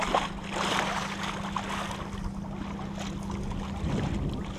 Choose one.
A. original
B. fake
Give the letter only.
A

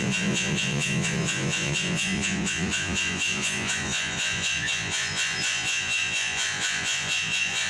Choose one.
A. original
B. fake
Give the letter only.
B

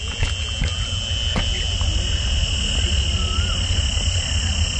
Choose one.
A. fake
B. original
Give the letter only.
B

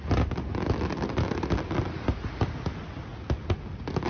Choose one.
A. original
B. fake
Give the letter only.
A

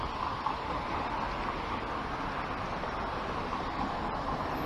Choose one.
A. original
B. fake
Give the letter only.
A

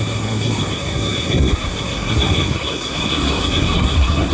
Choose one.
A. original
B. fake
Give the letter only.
B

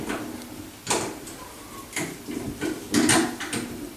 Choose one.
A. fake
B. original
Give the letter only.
B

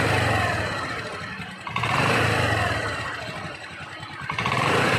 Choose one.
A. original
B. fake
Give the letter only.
B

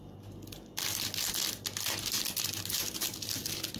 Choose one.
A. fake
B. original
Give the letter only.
B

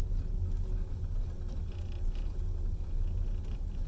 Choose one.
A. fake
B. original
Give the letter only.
B